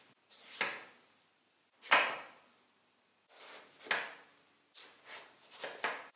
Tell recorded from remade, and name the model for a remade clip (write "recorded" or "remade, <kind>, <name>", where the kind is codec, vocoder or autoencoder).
recorded